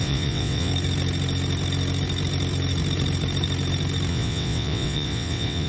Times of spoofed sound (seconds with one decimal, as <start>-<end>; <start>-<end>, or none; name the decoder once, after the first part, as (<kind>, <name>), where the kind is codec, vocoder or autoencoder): 0.0-0.7 (vocoder, WaveNeXt); 4.1-5.7